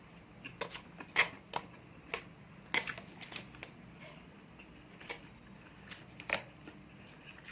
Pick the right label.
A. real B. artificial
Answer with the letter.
A